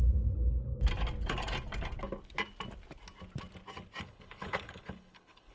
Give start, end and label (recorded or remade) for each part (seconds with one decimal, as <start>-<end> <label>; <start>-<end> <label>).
0.0-0.7 remade; 0.7-4.0 recorded; 4.0-5.5 remade